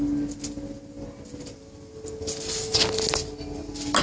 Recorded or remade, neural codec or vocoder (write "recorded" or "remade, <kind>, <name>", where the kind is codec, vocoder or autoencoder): recorded